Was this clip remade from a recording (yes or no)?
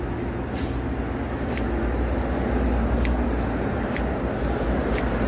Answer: no